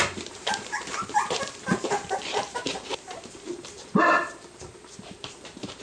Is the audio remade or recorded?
remade